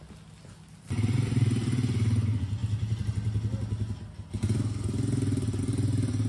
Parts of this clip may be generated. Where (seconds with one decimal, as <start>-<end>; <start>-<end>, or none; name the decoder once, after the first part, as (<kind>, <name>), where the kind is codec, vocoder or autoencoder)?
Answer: none